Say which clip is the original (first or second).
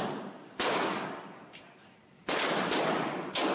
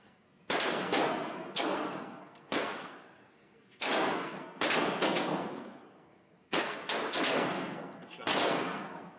first